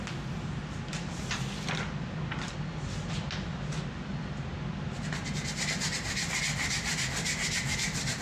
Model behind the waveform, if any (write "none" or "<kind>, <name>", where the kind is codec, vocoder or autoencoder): none